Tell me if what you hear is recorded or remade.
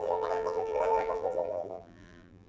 remade